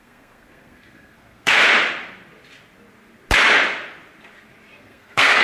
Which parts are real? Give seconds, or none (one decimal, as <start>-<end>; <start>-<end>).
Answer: 1.6-4.8

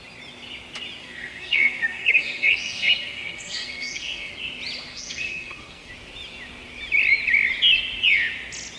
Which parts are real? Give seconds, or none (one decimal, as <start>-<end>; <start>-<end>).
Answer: 0.0-1.0; 4.3-4.9; 5.9-8.8